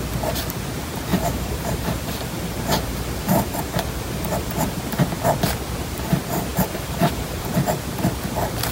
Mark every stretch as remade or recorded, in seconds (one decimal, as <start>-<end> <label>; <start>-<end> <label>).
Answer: 0.0-1.1 recorded; 1.1-4.8 remade; 4.8-6.5 recorded; 6.5-7.5 remade; 7.5-8.7 recorded